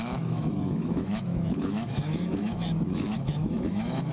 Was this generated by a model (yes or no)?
yes